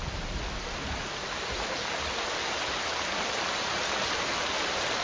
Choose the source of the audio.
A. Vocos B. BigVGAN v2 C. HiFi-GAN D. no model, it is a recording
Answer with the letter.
D